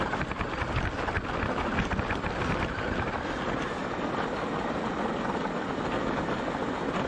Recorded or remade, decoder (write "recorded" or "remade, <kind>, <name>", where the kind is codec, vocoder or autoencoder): recorded